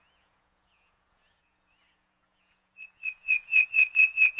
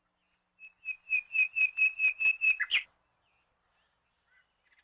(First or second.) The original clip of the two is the second